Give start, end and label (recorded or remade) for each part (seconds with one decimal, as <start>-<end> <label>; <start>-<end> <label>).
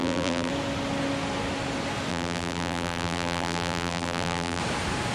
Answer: 0.0-0.5 remade; 0.5-2.1 recorded; 2.1-4.6 remade; 4.6-5.1 recorded